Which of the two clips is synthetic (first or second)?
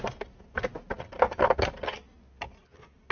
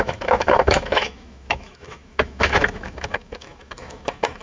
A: second